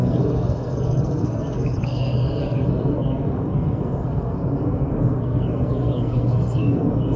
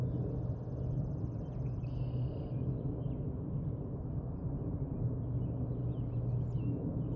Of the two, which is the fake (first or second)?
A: first